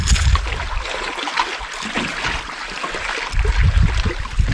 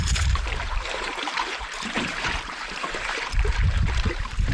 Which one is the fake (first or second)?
second